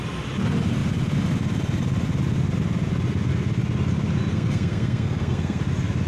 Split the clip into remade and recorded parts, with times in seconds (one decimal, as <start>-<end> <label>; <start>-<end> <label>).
0.0-4.3 recorded; 4.3-5.6 remade; 5.6-6.1 recorded